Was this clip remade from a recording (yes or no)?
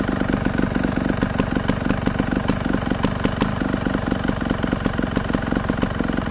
no